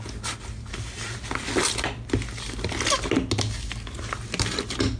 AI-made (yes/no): no